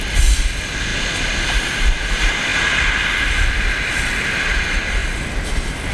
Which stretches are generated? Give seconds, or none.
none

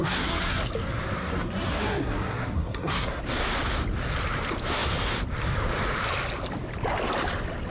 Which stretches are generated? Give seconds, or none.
0.0-0.6; 1.2-3.2

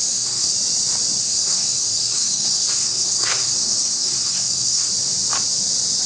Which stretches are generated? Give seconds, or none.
0.0-0.5; 1.2-4.9